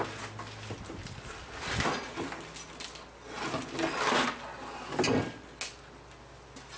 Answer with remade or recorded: recorded